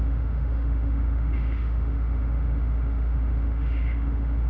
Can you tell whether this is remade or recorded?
remade